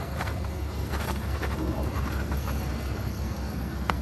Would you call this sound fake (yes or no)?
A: yes